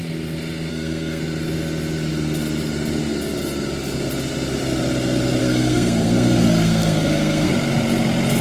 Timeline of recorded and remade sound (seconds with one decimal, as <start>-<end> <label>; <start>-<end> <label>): 0.0-0.7 recorded; 0.7-1.2 remade; 1.2-5.4 recorded; 5.4-7.5 remade; 7.5-8.4 recorded